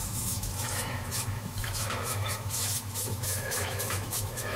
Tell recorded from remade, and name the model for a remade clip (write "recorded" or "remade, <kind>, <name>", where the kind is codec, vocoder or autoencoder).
remade, autoencoder, DAC-VAE